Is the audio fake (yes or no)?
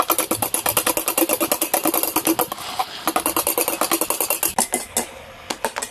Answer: no